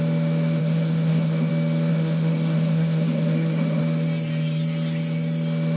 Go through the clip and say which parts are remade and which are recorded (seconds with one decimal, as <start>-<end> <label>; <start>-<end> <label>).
0.0-0.6 recorded; 0.6-1.5 remade; 1.5-1.9 recorded; 1.9-3.8 remade; 3.8-5.8 recorded